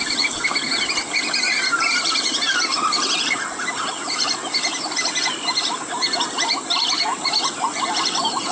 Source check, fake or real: real